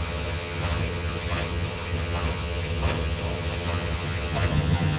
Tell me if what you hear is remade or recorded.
remade